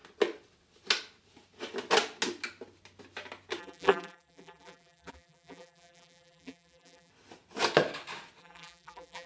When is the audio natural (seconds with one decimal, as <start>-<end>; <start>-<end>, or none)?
0.0-3.6; 7.1-8.4